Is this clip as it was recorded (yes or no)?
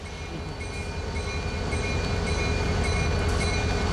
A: yes